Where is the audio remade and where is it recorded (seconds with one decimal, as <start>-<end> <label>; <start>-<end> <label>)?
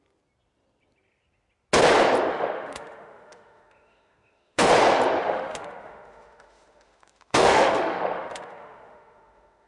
0.0-2.3 recorded; 2.3-4.7 remade; 4.7-5.2 recorded; 5.2-9.7 remade